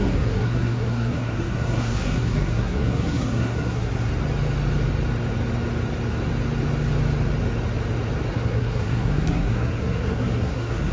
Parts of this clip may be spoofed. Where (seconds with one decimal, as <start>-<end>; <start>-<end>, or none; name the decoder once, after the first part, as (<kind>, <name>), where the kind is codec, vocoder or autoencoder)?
0.0-4.1 (codec, SNAC); 8.3-10.9